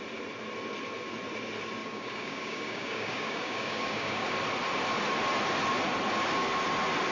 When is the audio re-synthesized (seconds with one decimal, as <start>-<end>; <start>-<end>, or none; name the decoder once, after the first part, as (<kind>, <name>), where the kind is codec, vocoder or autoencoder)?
1.8-4.3 (codec, DAC)

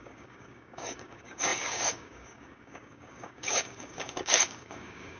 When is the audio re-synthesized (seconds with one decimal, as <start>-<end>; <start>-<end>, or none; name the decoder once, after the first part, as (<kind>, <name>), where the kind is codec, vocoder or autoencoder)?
0.0-5.2 (codec, DAC)